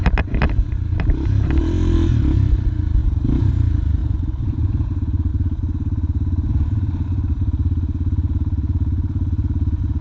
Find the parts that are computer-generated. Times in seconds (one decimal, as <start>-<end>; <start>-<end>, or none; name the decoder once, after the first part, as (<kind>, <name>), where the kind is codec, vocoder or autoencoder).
3.0-3.5 (vocoder, BigVGAN v2); 4.0-5.3

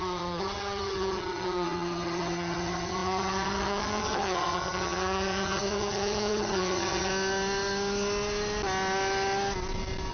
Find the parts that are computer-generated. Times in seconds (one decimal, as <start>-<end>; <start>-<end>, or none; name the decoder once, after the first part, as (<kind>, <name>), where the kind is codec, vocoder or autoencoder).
0.0-7.1 (vocoder, HiFi-GAN)

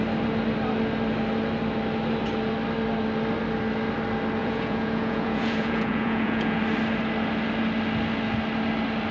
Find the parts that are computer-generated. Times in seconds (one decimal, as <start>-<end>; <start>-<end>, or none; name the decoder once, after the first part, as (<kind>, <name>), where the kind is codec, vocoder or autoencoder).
4.4-6.6 (vocoder, Vocos)

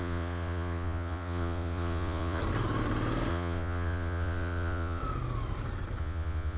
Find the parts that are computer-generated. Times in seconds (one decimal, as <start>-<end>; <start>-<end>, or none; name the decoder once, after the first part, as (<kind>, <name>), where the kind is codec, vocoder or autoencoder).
0.0-2.4 (vocoder, Vocos); 3.3-5.0; 6.0-6.6

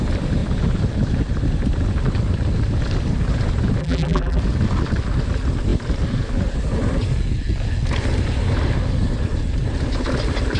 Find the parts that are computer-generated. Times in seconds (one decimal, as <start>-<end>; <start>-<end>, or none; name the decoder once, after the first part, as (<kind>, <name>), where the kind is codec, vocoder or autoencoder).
3.8-4.4 (vocoder, BigVGAN v2)

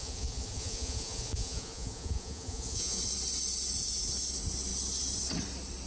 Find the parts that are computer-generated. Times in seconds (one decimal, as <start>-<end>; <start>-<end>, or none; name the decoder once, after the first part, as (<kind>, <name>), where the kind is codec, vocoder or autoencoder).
0.0-3.0 (vocoder, Vocos)